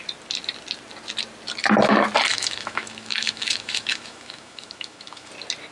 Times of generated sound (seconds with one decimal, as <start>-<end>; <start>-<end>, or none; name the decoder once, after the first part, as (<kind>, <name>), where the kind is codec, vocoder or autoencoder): 2.3-5.3 (autoencoder, DAC-VAE)